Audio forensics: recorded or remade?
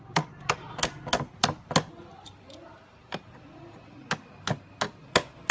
recorded